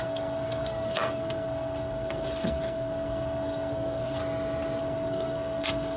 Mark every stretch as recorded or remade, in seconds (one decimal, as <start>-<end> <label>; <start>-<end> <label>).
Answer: 0.0-4.2 remade; 4.2-4.8 recorded; 4.8-6.0 remade